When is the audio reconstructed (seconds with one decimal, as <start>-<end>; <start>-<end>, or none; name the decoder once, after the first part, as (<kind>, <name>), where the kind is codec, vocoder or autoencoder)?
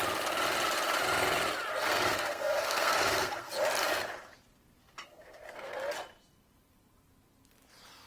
1.7-3.5 (codec, SNAC); 4.8-5.7